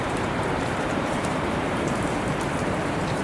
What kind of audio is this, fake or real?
fake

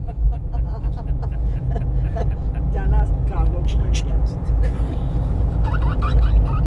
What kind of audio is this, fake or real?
real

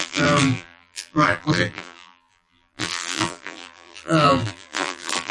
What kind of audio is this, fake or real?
fake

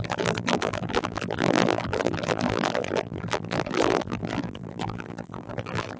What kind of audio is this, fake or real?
fake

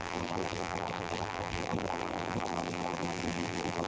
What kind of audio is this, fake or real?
fake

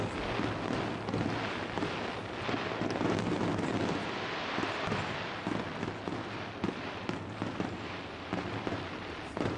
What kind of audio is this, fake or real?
real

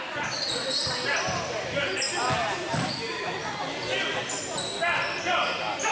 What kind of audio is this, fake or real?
real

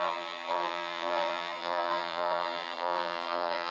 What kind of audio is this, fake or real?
fake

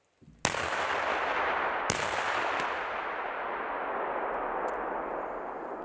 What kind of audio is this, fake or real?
real